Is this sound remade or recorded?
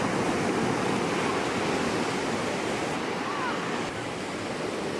recorded